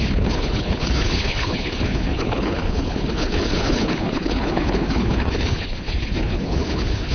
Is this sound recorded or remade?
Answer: remade